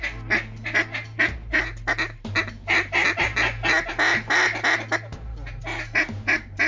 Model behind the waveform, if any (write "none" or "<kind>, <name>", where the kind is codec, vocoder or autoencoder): none